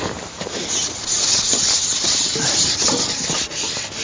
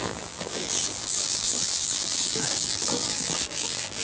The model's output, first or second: second